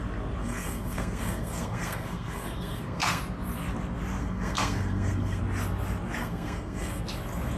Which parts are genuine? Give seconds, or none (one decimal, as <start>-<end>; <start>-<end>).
0.0-0.4; 3.2-4.2; 5.4-6.2; 7.0-7.6